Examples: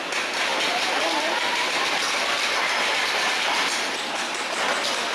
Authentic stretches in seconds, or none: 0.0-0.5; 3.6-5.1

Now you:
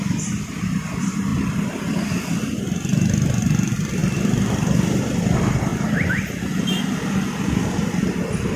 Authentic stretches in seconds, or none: none

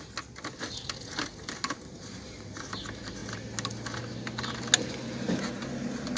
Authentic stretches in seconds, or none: 0.0-6.2